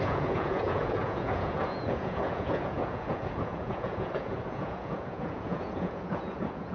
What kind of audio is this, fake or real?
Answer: fake